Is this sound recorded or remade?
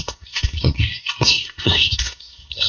remade